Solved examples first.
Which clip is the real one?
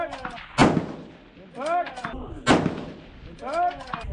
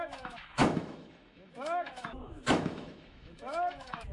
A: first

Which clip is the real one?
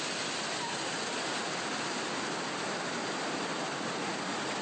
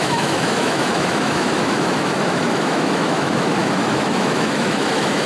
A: first